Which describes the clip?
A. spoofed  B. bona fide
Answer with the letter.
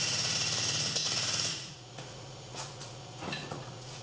A